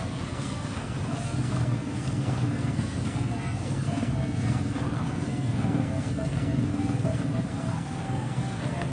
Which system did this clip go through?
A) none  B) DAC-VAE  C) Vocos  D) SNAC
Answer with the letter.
D